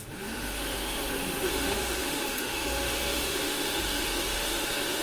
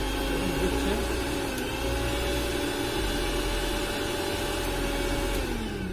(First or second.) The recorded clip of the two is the second